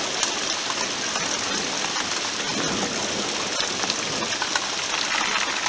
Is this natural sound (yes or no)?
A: yes